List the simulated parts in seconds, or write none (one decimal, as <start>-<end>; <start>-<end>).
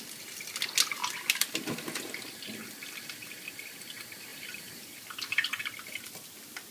4.3-5.6